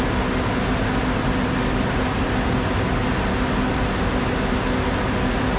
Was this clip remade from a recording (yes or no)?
no